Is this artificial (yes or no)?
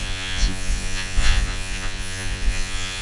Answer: yes